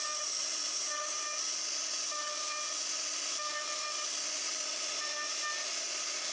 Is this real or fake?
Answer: real